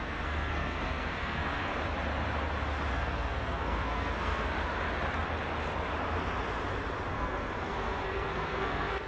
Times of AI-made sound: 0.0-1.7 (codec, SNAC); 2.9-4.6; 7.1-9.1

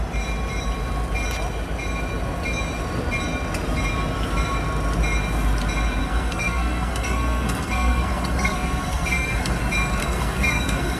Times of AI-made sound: 6.0-9.6 (codec, SNAC); 10.0-11.0

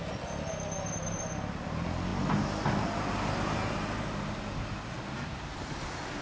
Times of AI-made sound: none